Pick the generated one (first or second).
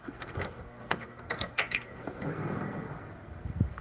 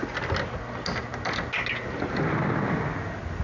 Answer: first